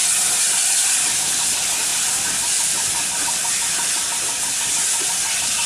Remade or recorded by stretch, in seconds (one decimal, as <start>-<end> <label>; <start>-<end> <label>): 0.0-1.9 recorded; 1.9-4.4 remade; 4.4-5.7 recorded